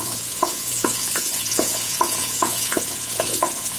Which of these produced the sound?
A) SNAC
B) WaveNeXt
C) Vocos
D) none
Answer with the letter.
C